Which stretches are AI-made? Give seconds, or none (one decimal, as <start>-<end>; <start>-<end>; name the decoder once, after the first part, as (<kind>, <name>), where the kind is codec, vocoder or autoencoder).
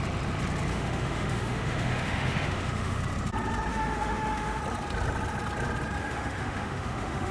0.7-3.0 (autoencoder, DAC-VAE); 3.7-4.6; 6.0-7.3